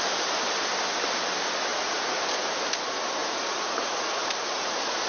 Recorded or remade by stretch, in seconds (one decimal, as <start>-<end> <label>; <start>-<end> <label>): 0.0-1.7 recorded; 1.7-2.2 remade; 2.2-3.2 recorded; 3.2-5.1 remade